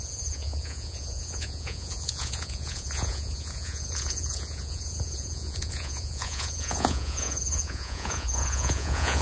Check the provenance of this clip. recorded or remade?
remade